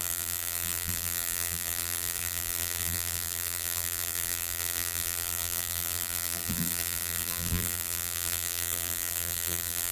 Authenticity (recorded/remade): remade